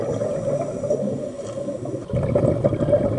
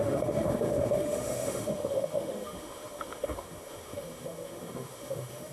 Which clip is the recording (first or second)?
first